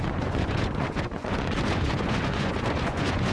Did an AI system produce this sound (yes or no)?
yes